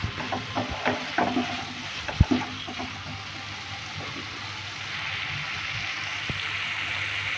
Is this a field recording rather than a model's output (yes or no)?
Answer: yes